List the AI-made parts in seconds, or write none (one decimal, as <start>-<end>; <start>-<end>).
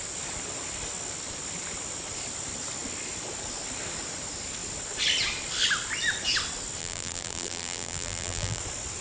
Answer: 6.8-8.6